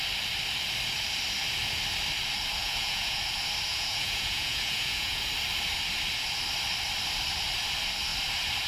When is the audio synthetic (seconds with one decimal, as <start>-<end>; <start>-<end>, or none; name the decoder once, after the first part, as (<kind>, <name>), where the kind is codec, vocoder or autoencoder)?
2.6-3.2 (vocoder, Vocos); 3.7-5.2